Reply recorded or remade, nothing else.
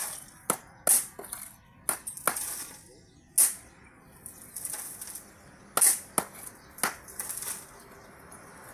recorded